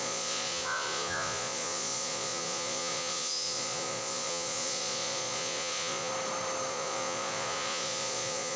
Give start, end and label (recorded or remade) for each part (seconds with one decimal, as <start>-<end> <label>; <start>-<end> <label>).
0.0-6.1 remade; 6.1-6.7 recorded; 6.7-8.6 remade